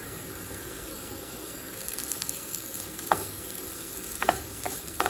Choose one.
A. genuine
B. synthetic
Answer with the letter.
B